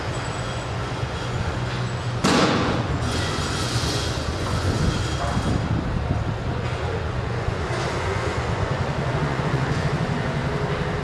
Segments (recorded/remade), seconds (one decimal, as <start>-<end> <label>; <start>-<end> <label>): 0.0-5.0 remade; 5.0-6.4 recorded; 6.4-10.4 remade; 10.4-11.0 recorded